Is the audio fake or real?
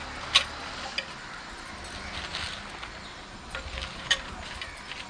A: real